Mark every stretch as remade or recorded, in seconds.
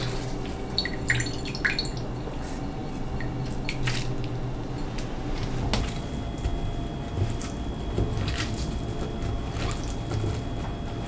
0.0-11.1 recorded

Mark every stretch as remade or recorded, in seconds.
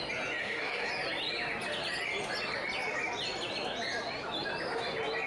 0.0-0.4 recorded; 0.4-0.9 remade; 0.9-5.3 recorded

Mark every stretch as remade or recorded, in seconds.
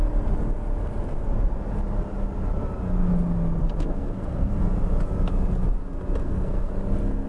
0.0-3.6 recorded; 3.6-4.5 remade; 4.5-6.2 recorded; 6.2-6.7 remade; 6.7-7.3 recorded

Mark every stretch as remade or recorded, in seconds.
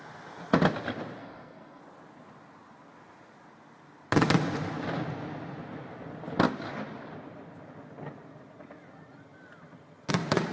0.0-1.2 recorded; 1.2-1.8 remade; 1.8-10.5 recorded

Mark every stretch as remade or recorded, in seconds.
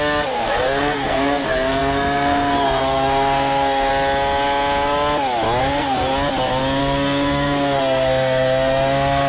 0.0-3.9 remade; 3.9-5.6 recorded; 5.6-6.1 remade; 6.1-6.8 recorded; 6.8-9.3 remade